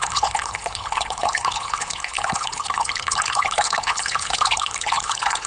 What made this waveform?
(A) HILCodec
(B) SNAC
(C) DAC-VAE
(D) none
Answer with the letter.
A